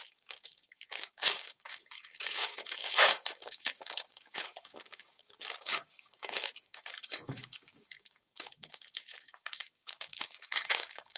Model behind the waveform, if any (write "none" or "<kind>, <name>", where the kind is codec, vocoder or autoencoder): codec, DAC